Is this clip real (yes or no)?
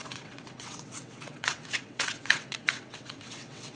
no